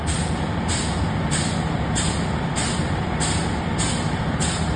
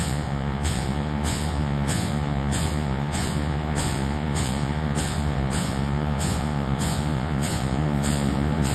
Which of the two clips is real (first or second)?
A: first